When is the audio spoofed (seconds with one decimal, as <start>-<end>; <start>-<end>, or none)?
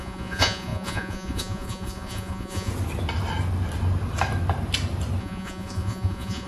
0.0-2.7; 5.2-6.5